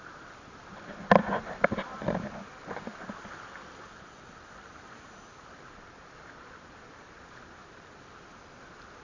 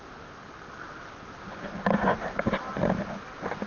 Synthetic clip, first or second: first